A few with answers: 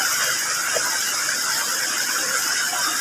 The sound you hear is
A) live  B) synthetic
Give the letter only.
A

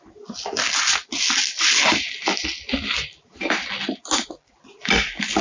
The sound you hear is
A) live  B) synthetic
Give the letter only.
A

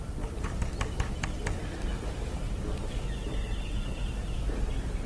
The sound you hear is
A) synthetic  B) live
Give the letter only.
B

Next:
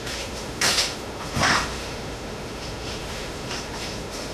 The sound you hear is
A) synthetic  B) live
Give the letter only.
A